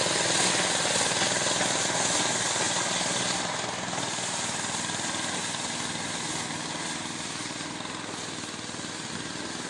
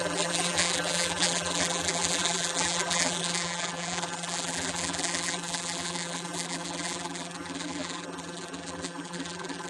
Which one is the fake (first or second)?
second